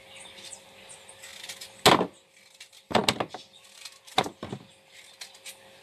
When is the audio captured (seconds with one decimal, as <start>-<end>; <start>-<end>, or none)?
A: 0.0-5.8

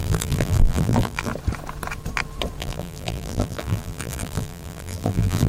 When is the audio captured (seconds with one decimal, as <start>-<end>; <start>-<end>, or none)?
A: 1.3-2.6

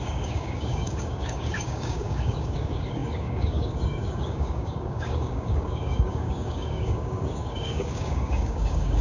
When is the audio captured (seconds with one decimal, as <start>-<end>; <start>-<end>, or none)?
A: none

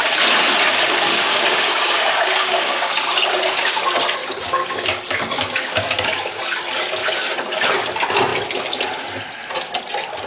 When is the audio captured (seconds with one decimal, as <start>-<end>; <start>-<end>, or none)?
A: 0.0-1.1; 3.8-4.2; 6.4-7.0; 7.9-10.3

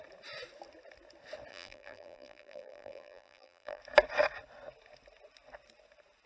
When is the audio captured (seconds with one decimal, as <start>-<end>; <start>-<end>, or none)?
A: 0.0-1.5; 3.8-6.3